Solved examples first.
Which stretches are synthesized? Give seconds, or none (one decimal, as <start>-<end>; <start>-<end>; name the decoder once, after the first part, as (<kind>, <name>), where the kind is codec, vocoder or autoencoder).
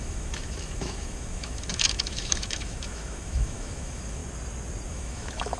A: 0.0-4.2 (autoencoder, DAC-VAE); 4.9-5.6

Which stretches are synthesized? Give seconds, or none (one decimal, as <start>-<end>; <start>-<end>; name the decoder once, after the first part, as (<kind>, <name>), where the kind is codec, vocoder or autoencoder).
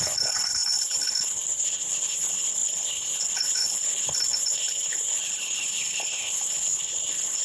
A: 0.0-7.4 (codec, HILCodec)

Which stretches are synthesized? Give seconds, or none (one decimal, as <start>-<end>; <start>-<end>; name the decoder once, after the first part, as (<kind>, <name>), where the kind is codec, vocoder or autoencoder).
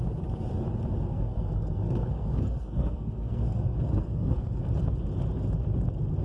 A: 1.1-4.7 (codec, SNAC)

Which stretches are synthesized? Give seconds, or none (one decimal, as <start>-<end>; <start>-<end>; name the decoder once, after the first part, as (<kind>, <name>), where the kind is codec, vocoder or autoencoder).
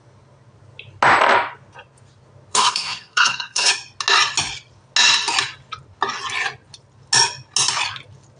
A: 2.5-3.7 (codec, SNAC)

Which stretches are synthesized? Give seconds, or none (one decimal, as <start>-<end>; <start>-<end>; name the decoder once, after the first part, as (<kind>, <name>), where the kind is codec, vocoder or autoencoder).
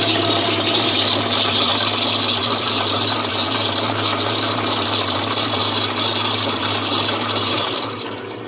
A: 0.0-1.7 (vocoder, BigVGAN v2); 2.4-5.6; 6.2-8.5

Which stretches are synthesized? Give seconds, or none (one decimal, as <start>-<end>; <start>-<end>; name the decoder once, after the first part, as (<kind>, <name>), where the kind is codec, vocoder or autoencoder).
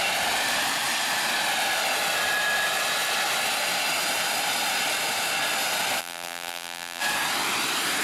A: 6.0-7.0 (vocoder, BigVGAN v2)